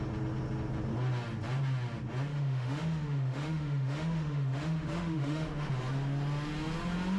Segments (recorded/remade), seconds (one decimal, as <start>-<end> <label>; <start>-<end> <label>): 0.0-2.3 recorded; 2.3-5.7 remade; 5.7-7.2 recorded